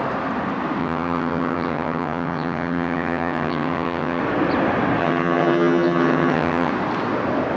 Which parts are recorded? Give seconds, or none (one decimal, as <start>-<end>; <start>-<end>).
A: 0.0-0.8; 4.2-5.0; 6.7-7.6